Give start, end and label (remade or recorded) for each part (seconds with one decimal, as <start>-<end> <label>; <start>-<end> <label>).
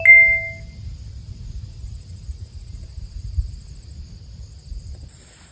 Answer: 0.0-1.2 recorded; 1.2-3.5 remade; 3.5-5.5 recorded